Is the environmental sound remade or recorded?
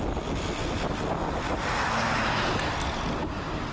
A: recorded